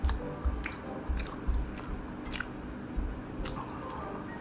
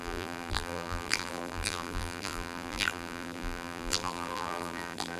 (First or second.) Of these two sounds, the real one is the first